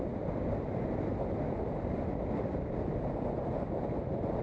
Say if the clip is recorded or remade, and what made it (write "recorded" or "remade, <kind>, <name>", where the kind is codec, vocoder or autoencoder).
recorded